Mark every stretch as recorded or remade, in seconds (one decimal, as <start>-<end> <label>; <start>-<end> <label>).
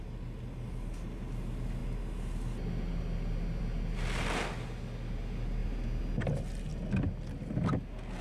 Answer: 0.0-8.2 recorded